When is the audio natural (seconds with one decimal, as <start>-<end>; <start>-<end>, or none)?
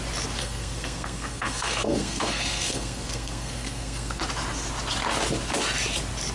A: 0.0-0.4; 4.2-6.3